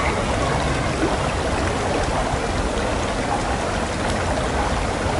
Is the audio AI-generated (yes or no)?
no